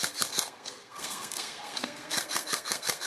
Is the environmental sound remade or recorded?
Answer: remade